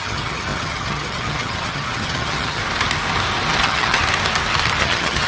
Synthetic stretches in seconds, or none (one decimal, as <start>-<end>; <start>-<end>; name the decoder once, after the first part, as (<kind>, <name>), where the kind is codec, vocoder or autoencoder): 0.0-2.6 (vocoder, HiFi-GAN); 3.5-4.0; 4.8-5.3